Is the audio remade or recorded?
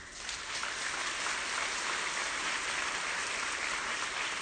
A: recorded